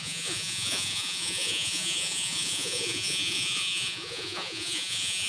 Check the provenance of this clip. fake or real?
fake